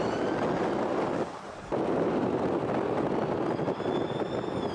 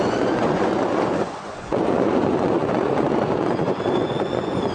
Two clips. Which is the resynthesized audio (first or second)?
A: second